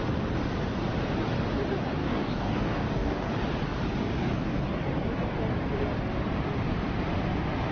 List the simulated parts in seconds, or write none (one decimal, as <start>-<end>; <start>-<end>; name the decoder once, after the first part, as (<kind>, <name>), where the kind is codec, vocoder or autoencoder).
2.0-3.3 (codec, DAC)